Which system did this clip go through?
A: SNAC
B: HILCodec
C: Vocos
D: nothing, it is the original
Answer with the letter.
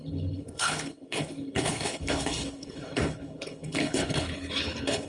B